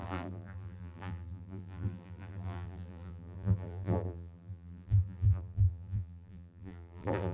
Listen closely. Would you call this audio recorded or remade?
remade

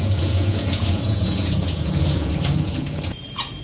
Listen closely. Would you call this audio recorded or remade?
remade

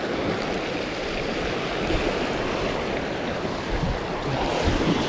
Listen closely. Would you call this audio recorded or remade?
recorded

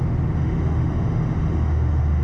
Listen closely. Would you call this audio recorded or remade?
remade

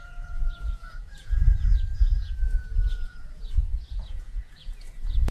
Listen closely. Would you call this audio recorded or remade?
remade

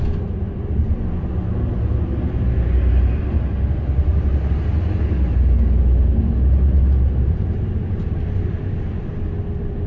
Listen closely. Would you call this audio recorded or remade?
recorded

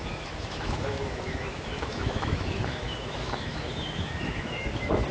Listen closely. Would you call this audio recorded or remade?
remade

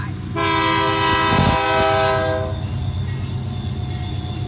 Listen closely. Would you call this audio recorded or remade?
recorded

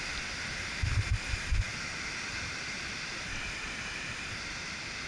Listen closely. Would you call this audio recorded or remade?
recorded